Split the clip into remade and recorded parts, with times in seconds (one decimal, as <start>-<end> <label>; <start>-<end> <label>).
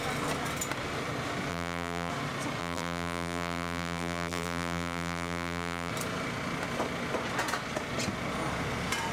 0.0-1.5 recorded; 1.5-2.1 remade; 2.1-2.6 recorded; 2.6-5.9 remade; 5.9-9.1 recorded